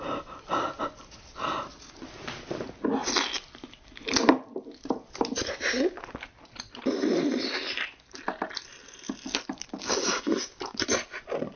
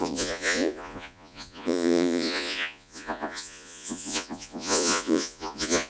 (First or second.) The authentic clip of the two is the first